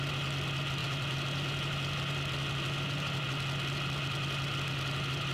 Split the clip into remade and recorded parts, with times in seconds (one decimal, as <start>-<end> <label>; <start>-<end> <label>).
0.0-5.3 recorded